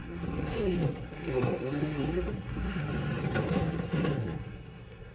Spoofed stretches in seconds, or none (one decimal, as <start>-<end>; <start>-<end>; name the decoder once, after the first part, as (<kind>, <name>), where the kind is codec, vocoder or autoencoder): 0.0-2.9 (codec, SNAC); 3.5-5.1

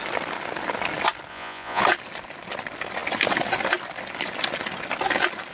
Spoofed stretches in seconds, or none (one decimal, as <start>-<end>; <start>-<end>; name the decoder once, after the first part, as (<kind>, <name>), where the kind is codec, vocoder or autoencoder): 1.3-1.8 (vocoder, Vocos)

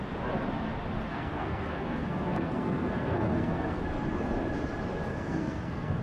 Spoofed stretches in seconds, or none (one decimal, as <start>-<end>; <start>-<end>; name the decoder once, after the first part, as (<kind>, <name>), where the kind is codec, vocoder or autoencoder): 1.1-3.8 (codec, SNAC); 5.1-6.0

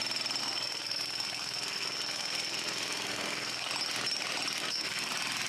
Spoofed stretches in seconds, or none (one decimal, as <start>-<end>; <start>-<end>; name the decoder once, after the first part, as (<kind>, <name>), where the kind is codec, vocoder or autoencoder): 0.4-3.7 (codec, SNAC); 4.6-5.1

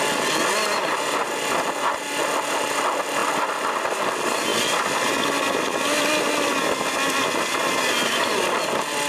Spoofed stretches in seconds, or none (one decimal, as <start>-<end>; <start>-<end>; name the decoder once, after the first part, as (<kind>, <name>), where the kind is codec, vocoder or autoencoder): none

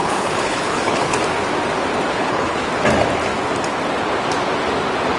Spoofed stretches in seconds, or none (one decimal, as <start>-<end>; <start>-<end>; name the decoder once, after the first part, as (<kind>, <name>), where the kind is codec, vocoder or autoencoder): 0.0-1.2 (codec, HILCodec); 2.1-2.7

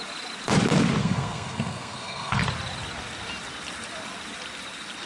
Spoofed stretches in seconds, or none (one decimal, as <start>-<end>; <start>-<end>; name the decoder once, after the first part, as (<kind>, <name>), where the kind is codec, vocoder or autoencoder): 1.0-2.4 (codec, SNAC)